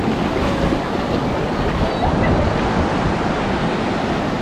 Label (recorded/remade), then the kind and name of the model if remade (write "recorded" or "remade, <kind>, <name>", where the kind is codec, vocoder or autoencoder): recorded